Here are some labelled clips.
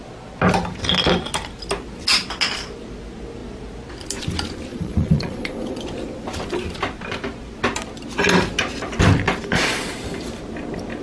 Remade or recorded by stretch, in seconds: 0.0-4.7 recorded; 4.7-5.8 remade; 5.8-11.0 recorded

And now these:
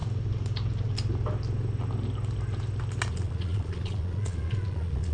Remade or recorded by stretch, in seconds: 0.0-3.1 recorded; 3.1-5.1 remade

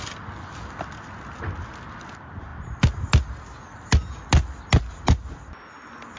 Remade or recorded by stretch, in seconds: 0.0-6.2 recorded

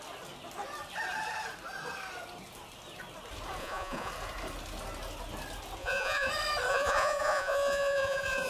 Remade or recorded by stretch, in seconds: 0.0-3.6 recorded; 3.6-4.1 remade; 4.1-5.8 recorded; 5.8-6.3 remade; 6.3-6.7 recorded; 6.7-8.5 remade

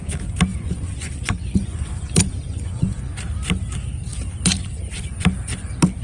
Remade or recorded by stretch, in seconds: 0.0-0.5 recorded; 0.5-3.0 remade; 3.0-6.0 recorded

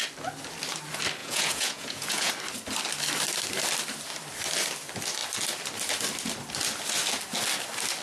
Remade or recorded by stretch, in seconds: 0.0-1.2 recorded; 1.2-2.3 remade; 2.3-8.0 recorded

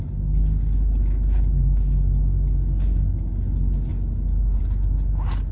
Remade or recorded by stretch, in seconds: 0.0-5.5 recorded

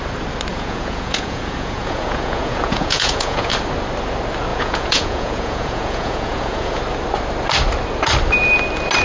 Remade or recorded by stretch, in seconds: 0.0-0.5 recorded; 0.5-3.5 remade; 3.5-4.5 recorded; 4.5-6.8 remade; 6.8-9.0 recorded